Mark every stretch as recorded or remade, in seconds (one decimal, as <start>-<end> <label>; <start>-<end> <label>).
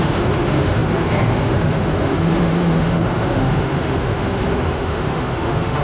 0.0-5.8 remade